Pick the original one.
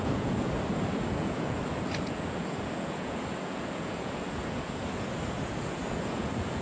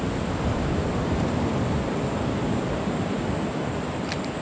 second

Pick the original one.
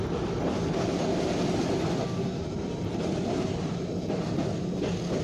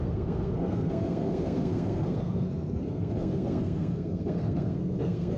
first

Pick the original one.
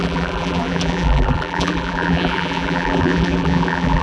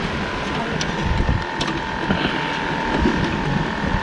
second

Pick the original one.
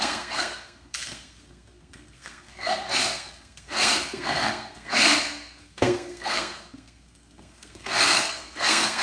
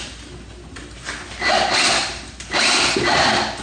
second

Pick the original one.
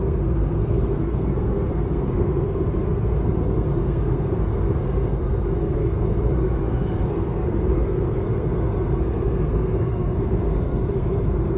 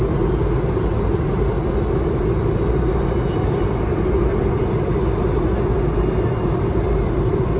second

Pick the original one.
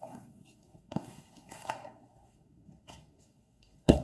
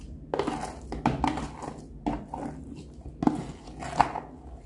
second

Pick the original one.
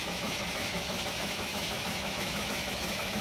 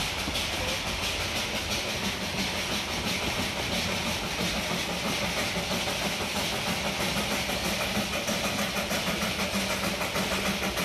second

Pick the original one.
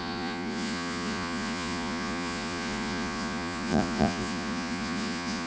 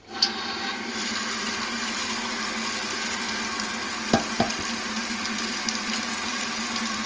second